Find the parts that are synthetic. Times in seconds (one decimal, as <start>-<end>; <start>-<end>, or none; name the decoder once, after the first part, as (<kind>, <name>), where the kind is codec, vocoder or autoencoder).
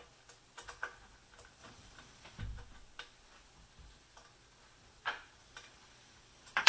1.6-2.4 (vocoder, BigVGAN v2); 5.4-6.7